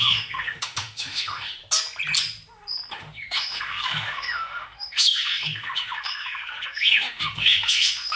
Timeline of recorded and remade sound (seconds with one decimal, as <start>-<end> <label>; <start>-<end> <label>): 0.0-1.6 remade; 1.6-2.9 recorded; 2.9-8.2 remade